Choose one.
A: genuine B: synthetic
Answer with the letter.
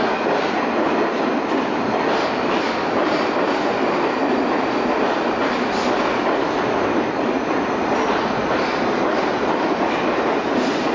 A